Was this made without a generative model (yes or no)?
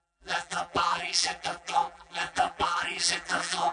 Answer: no